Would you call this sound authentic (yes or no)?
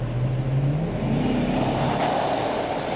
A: yes